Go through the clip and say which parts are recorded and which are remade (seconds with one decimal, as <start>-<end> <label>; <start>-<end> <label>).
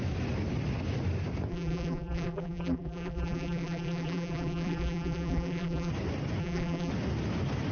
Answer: 0.0-1.5 recorded; 1.5-5.9 remade; 5.9-6.4 recorded; 6.4-6.9 remade; 6.9-7.7 recorded